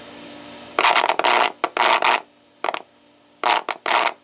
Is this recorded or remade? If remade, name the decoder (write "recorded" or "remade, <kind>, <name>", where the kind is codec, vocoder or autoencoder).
recorded